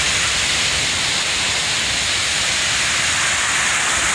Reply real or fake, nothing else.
real